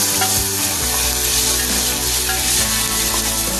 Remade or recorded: recorded